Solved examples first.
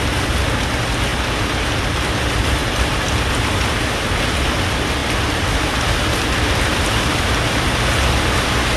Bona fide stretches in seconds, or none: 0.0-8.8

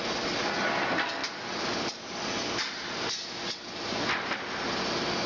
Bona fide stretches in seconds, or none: 0.0-1.2; 4.4-5.3

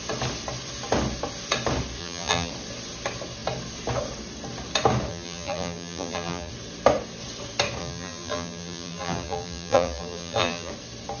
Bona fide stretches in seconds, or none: 0.0-2.0; 2.5-5.1; 6.5-7.8; 10.7-11.2

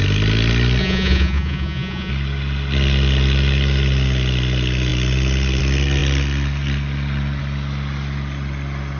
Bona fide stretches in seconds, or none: 0.0-0.8; 2.1-9.0

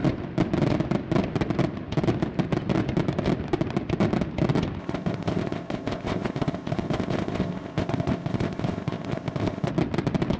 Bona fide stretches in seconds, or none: 0.0-4.8; 9.7-10.4

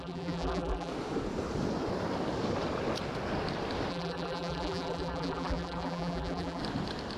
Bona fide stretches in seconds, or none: 0.9-3.9; 6.6-7.2

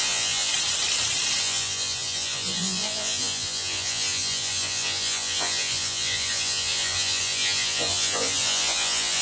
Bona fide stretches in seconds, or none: 0.5-1.4

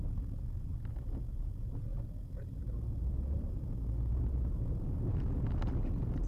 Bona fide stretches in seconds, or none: 0.0-1.3; 3.5-6.3